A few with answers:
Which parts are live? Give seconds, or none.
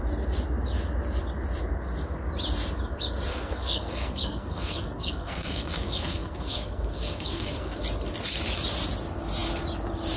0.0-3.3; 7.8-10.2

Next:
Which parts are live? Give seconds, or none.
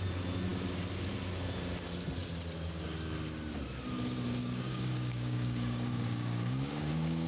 0.0-4.4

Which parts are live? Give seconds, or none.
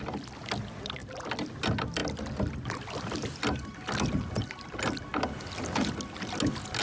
0.0-6.8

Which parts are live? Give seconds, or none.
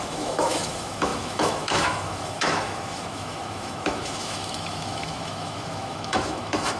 none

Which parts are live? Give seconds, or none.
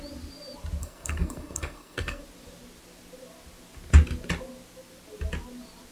0.0-0.8; 2.2-5.9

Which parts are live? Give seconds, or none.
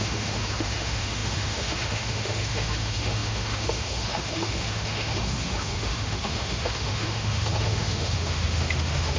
none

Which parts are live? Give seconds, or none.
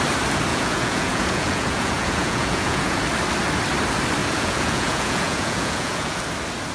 0.0-0.5; 3.0-4.2; 6.2-6.7